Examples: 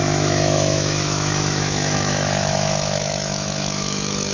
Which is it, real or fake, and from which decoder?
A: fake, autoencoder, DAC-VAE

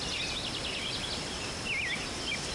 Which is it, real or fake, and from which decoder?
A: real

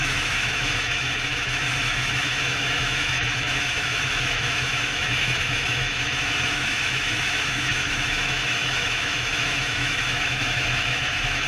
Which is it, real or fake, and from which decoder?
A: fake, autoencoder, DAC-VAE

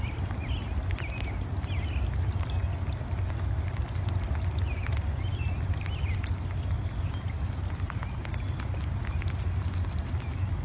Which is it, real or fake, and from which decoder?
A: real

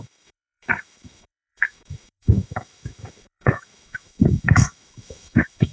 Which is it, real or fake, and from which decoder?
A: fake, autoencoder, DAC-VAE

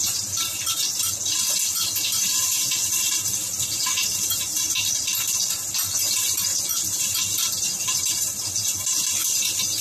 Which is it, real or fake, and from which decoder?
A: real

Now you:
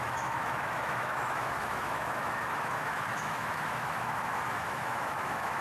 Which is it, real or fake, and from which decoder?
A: fake, autoencoder, DAC-VAE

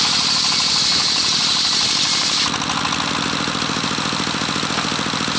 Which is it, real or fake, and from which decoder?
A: real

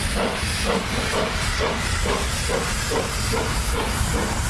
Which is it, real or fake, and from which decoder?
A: real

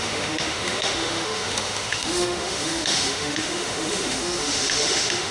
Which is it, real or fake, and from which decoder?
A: fake, autoencoder, DAC-VAE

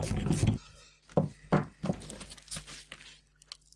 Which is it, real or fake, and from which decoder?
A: real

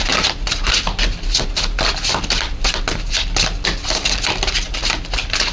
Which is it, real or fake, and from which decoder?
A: real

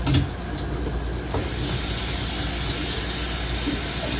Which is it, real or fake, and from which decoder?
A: real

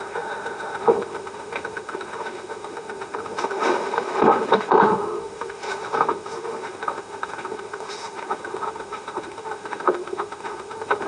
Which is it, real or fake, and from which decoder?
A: fake, autoencoder, DAC-VAE